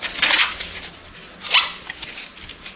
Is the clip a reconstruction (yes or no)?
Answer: no